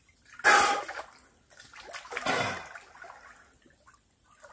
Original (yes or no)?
yes